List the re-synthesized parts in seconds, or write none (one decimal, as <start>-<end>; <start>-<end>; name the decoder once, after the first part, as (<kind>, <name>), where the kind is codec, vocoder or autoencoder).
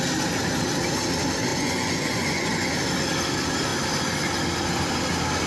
1.5-2.7 (vocoder, Vocos)